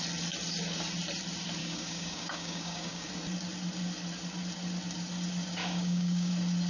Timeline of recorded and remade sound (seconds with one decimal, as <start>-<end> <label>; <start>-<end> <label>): 0.0-1.6 recorded; 1.6-3.1 remade; 3.1-5.6 recorded; 5.6-6.3 remade; 6.3-6.7 recorded